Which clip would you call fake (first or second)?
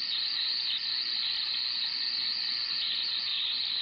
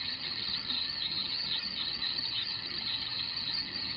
second